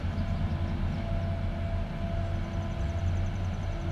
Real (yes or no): yes